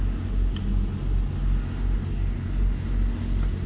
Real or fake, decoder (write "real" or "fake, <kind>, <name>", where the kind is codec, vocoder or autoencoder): real